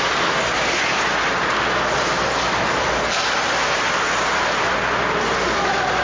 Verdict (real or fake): real